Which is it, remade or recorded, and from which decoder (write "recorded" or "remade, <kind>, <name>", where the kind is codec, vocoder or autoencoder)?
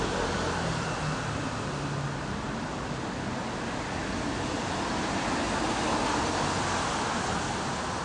recorded